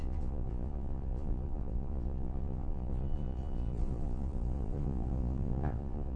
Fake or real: fake